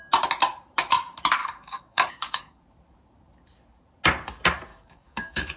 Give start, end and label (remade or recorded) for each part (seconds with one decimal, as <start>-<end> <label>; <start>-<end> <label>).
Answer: 0.0-1.4 recorded; 1.4-2.6 remade; 2.6-4.7 recorded; 4.7-5.6 remade